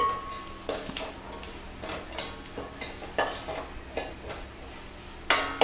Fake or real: real